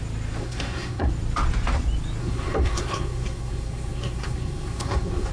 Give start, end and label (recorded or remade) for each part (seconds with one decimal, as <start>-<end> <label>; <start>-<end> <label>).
0.0-0.4 recorded; 0.4-1.1 remade; 1.1-2.2 recorded; 2.2-5.3 remade